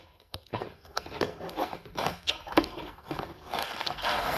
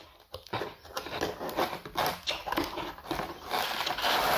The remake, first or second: first